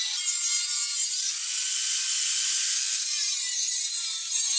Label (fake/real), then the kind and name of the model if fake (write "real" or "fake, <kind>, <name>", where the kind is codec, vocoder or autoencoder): real